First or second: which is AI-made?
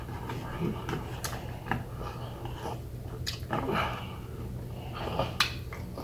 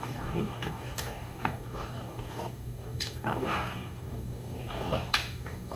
second